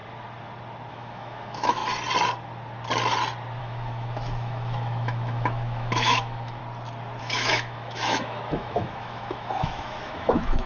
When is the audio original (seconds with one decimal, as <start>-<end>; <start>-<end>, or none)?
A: 0.0-0.9; 1.8-3.6; 6.6-7.2